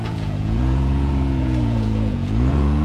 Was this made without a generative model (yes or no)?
no